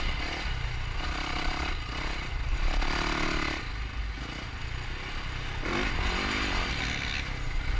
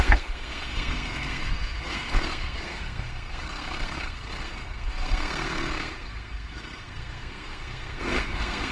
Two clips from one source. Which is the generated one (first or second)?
second